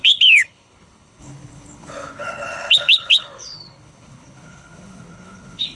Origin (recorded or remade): remade